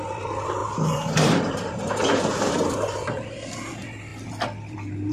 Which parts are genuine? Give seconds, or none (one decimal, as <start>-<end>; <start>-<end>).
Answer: 0.0-0.6; 3.1-5.1